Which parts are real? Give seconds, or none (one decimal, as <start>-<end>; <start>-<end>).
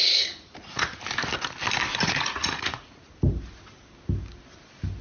1.0-2.0; 3.1-5.0